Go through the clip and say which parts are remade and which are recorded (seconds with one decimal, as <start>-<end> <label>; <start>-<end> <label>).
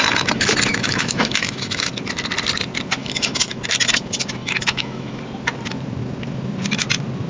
0.0-0.7 recorded; 0.7-1.9 remade; 1.9-3.0 recorded; 3.0-3.6 remade; 3.6-4.4 recorded; 4.4-5.2 remade; 5.2-7.3 recorded